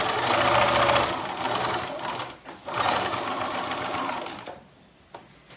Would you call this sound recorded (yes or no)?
yes